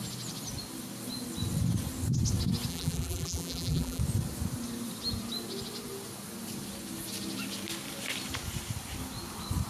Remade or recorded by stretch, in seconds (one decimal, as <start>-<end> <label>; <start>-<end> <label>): 0.0-2.7 recorded; 2.7-4.0 remade; 4.0-9.7 recorded